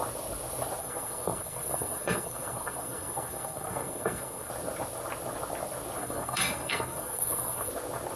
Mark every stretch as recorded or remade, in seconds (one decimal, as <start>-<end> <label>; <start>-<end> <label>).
0.0-0.8 recorded; 0.8-4.5 remade; 4.5-6.0 recorded; 6.0-7.7 remade; 7.7-8.2 recorded